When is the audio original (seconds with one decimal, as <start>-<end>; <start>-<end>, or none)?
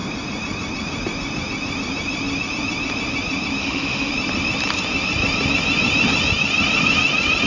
0.0-3.6; 4.1-7.5